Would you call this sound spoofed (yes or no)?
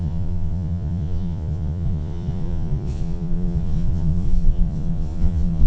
yes